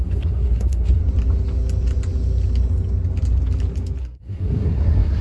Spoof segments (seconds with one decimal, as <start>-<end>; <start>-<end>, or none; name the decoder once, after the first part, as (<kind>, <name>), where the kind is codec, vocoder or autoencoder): 0.0-1.0 (codec, SNAC); 4.0-5.2